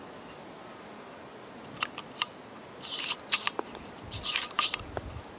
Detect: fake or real real